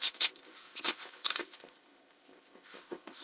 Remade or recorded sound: remade